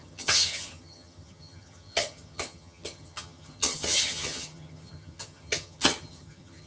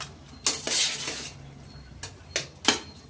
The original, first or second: second